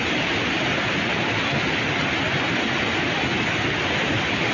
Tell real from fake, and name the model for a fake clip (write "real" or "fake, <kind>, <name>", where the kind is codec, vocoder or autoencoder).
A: real